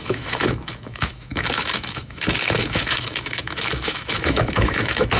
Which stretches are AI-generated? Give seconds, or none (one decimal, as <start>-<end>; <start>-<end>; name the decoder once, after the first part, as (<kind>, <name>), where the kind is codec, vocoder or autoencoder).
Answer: 0.0-5.2 (autoencoder, DAC-VAE)